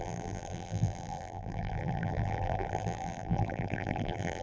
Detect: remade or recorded remade